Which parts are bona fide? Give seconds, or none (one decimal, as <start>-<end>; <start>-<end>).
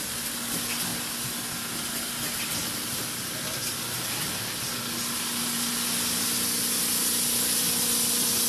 0.0-8.5